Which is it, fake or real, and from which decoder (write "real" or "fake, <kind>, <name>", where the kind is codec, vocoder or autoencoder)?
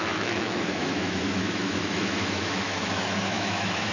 fake, autoencoder, DAC-VAE